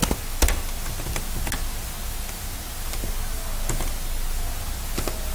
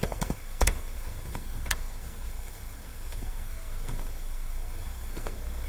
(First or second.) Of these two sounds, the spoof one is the second